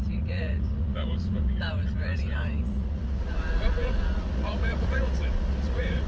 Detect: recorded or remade remade